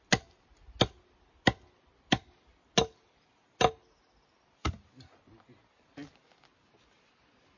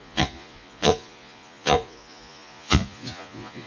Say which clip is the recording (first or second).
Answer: first